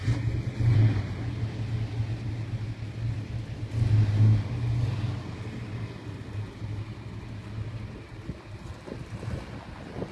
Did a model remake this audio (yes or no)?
no